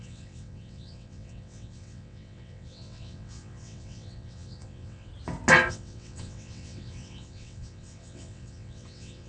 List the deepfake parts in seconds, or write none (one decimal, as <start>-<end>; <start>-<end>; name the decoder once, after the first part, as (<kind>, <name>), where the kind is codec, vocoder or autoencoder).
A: 0.0-5.1 (vocoder, WaveNeXt); 5.7-9.3

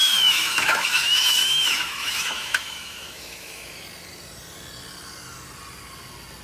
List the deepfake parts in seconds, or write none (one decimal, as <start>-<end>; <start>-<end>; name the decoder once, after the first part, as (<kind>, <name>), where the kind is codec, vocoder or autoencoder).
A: 0.0-3.8 (autoencoder, DAC-VAE)

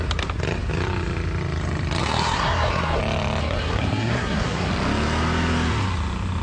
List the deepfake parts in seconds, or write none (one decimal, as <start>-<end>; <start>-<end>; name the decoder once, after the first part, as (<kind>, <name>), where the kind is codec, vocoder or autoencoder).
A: 2.0-3.0 (codec, SNAC); 3.4-4.7

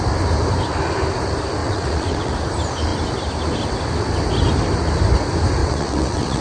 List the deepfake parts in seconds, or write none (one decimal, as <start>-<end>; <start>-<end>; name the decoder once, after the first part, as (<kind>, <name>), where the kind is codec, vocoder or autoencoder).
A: 1.6-2.3 (vocoder, WaveNeXt); 5.6-6.4

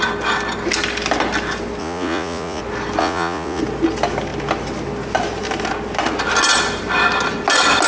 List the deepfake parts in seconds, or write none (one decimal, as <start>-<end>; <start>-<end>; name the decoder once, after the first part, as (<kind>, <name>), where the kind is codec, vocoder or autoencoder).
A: 1.8-2.6 (vocoder, Vocos); 3.0-3.6

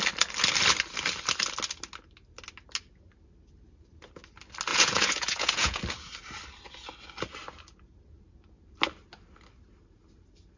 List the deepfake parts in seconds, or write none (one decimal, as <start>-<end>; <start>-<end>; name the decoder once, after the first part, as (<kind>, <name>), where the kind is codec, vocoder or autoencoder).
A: 4.7-5.8 (vocoder, Vocos)

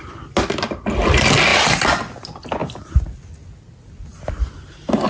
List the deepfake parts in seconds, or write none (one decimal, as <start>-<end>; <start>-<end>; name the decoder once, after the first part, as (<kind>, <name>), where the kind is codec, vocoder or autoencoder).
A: none

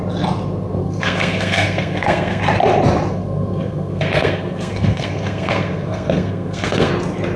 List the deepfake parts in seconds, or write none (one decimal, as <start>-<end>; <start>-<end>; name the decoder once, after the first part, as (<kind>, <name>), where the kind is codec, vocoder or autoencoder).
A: 0.8-2.4 (codec, SNAC); 3.1-6.9